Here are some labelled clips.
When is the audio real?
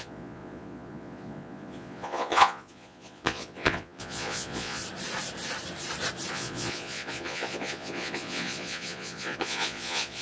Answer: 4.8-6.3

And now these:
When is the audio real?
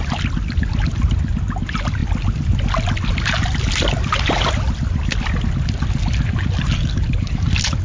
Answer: 0.0-7.8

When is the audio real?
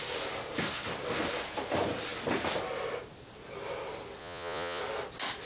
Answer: 0.0-4.2; 4.8-5.5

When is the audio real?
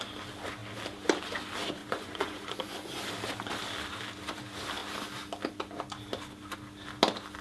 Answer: 0.0-1.8; 3.0-7.4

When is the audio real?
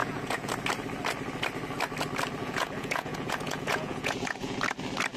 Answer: 0.5-2.4; 4.6-5.2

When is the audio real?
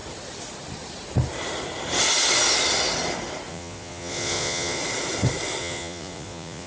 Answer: 0.0-3.5; 4.8-5.6